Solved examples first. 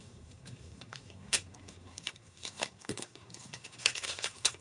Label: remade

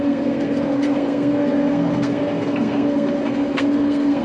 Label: remade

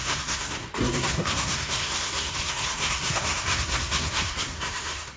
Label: remade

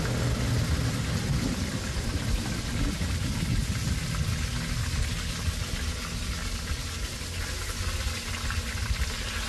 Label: recorded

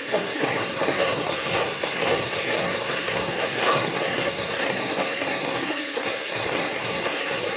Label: remade